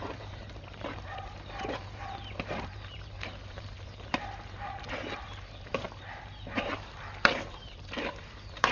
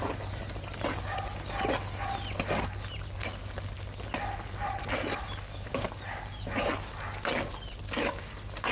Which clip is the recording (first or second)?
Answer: second